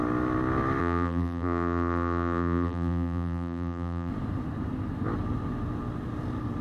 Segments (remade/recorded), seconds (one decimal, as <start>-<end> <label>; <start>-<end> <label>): 0.0-0.8 recorded; 0.8-4.1 remade; 4.1-6.6 recorded